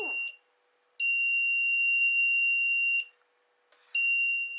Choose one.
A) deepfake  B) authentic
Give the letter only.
B